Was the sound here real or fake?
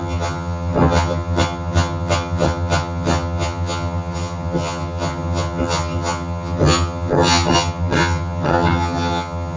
fake